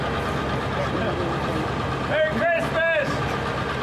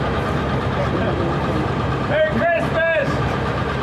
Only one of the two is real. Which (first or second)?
first